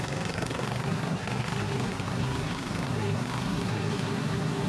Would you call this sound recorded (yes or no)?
no